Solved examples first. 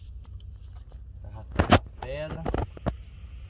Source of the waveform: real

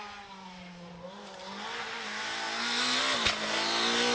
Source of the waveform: real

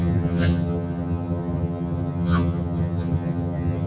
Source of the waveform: fake